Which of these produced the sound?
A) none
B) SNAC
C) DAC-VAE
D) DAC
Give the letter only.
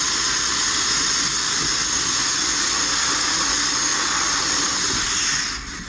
A